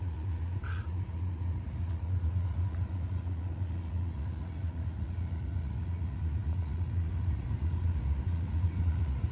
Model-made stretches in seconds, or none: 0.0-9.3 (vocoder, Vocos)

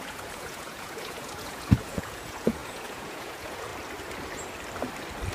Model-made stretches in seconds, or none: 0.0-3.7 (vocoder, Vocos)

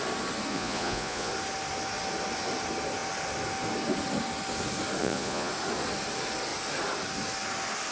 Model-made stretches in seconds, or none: 0.5-1.3 (vocoder, Vocos); 5.0-5.5

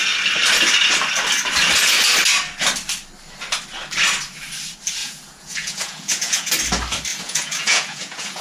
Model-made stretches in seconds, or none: 5.0-6.5 (vocoder, Vocos); 7.1-8.4

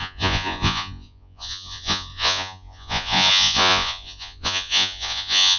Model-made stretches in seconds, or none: 0.0-5.6 (vocoder, Vocos)

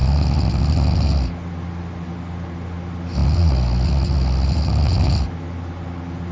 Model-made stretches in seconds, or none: none

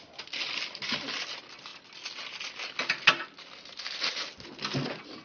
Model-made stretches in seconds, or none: none